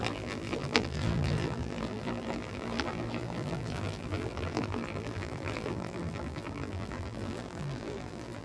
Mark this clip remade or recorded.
remade